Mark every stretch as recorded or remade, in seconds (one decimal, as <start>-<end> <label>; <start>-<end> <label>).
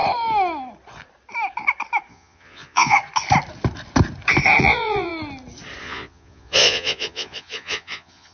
0.0-2.1 recorded; 2.1-3.0 remade; 3.0-4.6 recorded; 4.6-5.1 remade; 5.1-5.8 recorded; 5.8-8.3 remade